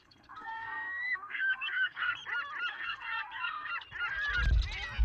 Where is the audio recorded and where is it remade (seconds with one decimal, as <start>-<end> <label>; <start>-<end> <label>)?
0.0-2.2 remade; 2.2-2.7 recorded; 2.7-3.7 remade; 3.7-5.0 recorded